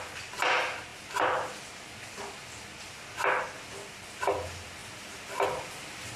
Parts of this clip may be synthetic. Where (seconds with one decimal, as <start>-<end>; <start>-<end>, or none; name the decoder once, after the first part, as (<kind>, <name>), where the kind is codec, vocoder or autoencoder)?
none